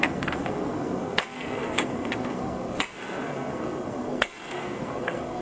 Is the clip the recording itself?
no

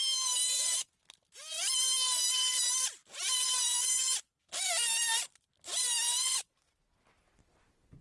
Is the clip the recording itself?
yes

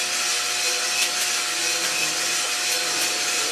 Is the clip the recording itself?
yes